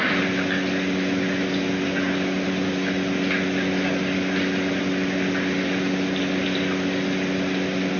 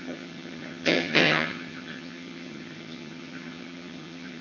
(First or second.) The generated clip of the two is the second